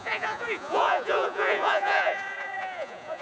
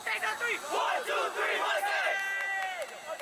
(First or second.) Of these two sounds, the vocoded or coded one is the first